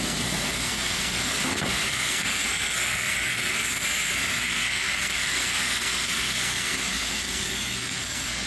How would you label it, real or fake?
fake